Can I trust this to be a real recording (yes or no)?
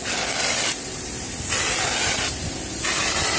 yes